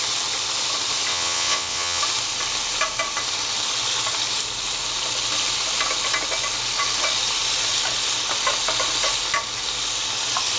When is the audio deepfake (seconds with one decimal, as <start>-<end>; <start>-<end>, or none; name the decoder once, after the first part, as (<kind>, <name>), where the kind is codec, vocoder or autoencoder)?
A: 1.1-2.0 (vocoder, WaveNeXt)